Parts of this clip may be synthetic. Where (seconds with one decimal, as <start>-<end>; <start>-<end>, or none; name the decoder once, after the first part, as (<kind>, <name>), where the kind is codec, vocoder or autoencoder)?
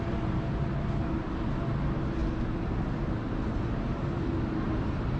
none